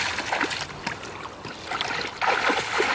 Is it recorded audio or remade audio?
recorded